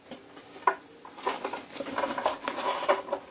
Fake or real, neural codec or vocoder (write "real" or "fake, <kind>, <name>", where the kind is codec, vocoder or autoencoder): real